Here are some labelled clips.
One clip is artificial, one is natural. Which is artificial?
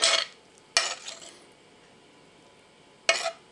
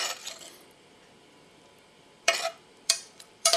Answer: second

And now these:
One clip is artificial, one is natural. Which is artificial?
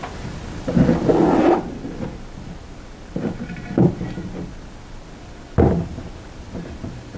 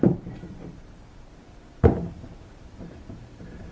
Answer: second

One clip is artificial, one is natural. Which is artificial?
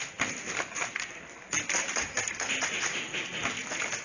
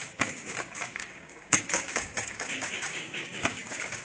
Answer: second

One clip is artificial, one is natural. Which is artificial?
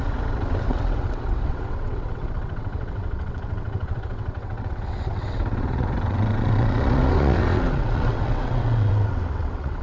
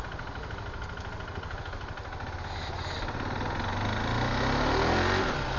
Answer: first